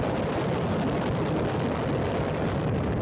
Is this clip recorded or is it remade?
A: recorded